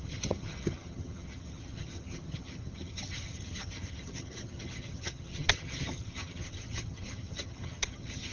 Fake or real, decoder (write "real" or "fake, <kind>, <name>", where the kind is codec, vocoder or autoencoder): fake, vocoder, HiFi-GAN